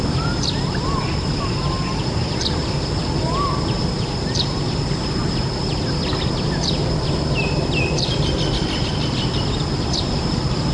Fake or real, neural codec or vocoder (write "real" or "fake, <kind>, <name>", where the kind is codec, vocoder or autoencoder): fake, vocoder, BigVGAN v2